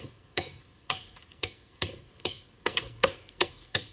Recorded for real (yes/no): no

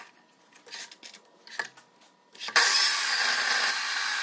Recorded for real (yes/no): yes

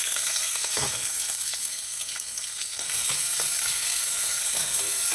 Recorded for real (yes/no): no